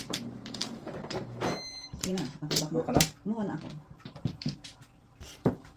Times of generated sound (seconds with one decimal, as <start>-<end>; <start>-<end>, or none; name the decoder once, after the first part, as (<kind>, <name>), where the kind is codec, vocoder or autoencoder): 0.0-5.8 (vocoder, BigVGAN v2)